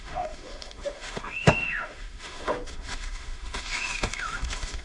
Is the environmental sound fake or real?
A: fake